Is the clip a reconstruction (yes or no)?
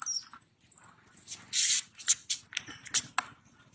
no